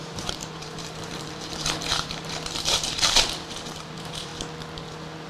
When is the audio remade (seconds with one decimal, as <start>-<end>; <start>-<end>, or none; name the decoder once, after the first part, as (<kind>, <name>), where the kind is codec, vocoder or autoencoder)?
0.0-4.3 (vocoder, BigVGAN v2)